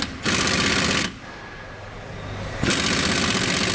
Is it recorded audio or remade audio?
recorded